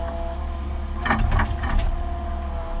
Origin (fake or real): real